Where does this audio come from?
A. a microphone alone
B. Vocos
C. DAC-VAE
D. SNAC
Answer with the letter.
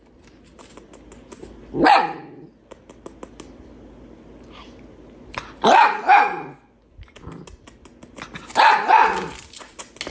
A